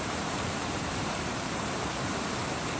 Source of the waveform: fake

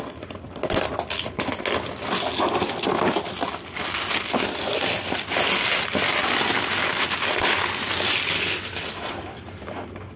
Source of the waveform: real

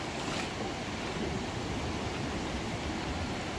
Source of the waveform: real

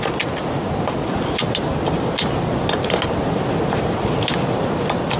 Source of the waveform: real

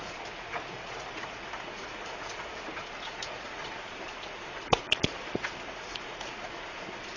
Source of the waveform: fake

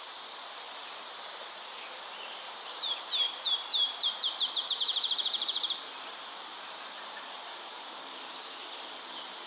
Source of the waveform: fake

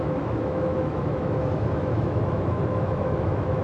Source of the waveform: fake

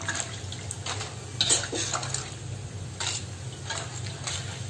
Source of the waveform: real